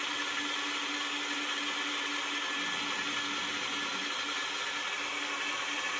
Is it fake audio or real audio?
real